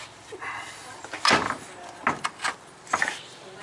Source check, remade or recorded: recorded